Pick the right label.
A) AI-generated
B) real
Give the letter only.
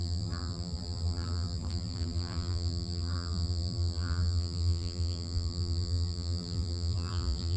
A